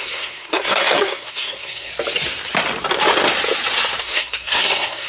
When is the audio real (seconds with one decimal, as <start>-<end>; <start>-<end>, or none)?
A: 1.9-4.0